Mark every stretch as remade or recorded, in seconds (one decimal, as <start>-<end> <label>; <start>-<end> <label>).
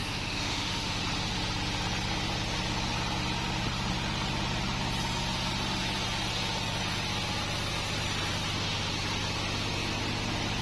0.0-1.0 remade; 1.0-10.6 recorded